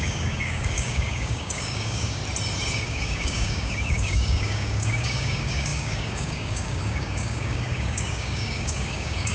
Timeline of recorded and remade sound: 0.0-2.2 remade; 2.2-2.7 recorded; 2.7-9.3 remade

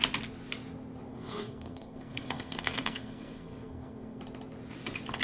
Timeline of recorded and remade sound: 0.0-1.1 recorded; 1.1-4.2 remade; 4.2-5.2 recorded

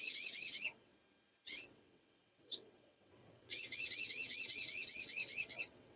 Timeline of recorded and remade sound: 0.0-0.9 remade; 0.9-1.5 recorded; 1.5-6.0 remade

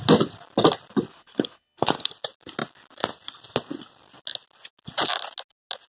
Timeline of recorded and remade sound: 0.0-1.1 recorded; 1.1-2.1 remade; 2.1-6.0 recorded

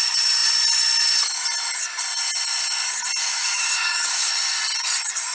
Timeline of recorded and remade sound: 0.0-3.2 recorded; 3.2-4.3 remade; 4.3-5.3 recorded

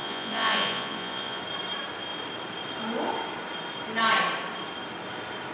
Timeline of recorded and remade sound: 0.0-1.4 remade; 1.4-5.5 recorded

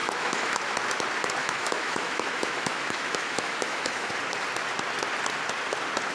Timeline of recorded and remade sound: 0.0-0.6 remade; 0.6-1.4 recorded; 1.4-4.1 remade; 4.1-6.1 recorded